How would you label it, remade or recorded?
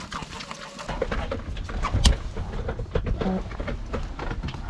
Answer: recorded